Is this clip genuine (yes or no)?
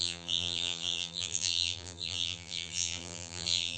no